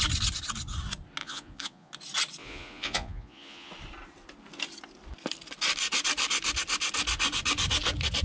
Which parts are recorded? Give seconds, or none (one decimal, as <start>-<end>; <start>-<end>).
0.0-1.2; 1.9-2.4; 3.7-8.2